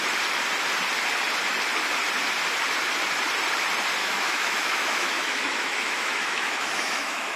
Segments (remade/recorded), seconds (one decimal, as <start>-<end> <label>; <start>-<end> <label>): 0.0-4.0 recorded; 4.0-7.4 remade